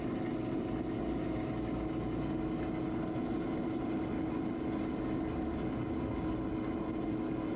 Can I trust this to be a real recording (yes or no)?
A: yes